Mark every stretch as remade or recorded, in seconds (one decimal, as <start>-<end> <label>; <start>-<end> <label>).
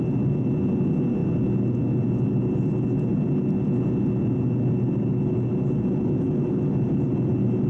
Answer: 0.0-7.7 recorded